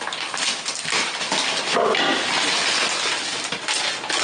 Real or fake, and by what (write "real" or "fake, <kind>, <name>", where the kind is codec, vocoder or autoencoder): real